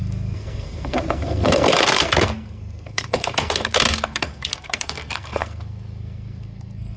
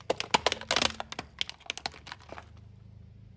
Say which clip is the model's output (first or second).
first